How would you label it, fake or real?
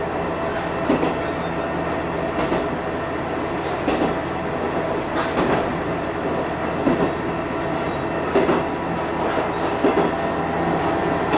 real